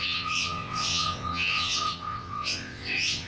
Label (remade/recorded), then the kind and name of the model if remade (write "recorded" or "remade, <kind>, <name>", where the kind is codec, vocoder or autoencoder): remade, vocoder, WaveNeXt